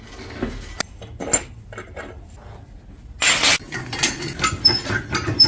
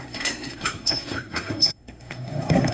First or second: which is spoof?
second